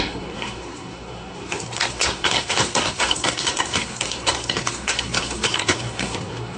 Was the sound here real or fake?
fake